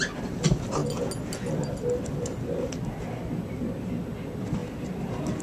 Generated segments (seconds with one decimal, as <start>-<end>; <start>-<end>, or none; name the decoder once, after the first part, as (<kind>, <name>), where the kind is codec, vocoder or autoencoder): none